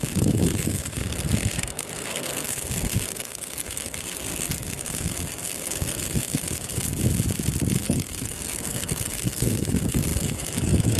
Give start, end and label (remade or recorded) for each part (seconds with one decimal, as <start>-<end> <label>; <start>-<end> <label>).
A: 0.0-6.8 remade; 6.8-7.8 recorded; 7.8-11.0 remade

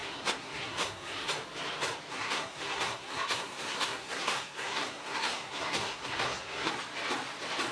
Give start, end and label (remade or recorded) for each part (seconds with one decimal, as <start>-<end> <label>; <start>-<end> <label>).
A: 0.0-1.3 remade; 1.3-2.1 recorded; 2.1-6.7 remade; 6.7-7.7 recorded

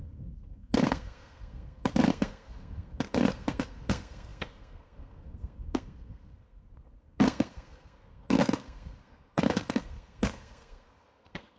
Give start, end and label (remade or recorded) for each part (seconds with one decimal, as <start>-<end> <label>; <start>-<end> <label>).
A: 0.0-11.6 remade

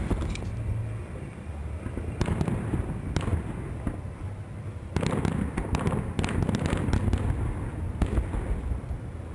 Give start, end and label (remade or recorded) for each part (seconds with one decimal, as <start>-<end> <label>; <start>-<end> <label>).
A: 0.0-9.3 recorded

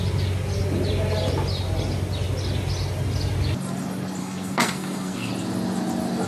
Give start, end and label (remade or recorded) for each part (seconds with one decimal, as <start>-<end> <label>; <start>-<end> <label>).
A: 0.0-4.2 recorded; 4.2-5.3 remade; 5.3-6.3 recorded